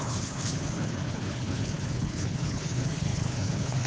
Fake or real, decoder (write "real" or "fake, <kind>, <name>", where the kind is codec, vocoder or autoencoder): fake, codec, HILCodec